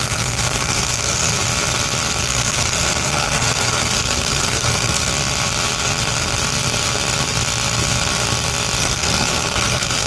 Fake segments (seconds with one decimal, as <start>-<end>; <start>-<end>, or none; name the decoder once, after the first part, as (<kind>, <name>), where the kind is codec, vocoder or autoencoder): 0.0-1.3 (codec, SNAC); 2.2-5.1; 8.8-10.1